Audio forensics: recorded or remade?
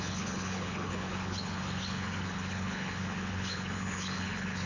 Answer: remade